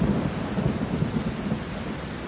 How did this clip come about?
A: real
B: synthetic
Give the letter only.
A